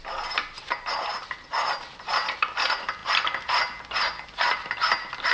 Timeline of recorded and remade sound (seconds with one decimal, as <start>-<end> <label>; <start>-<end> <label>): 0.0-5.3 recorded